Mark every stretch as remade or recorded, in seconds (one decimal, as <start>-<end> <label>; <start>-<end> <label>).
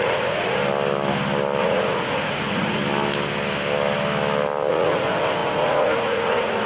0.0-0.6 remade; 0.6-1.6 recorded; 1.6-2.8 remade; 2.8-4.7 recorded; 4.7-6.7 remade